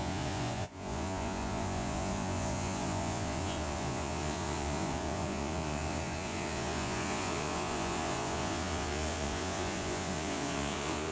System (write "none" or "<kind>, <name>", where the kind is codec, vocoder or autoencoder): vocoder, Vocos